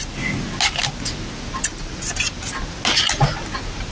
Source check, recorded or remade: recorded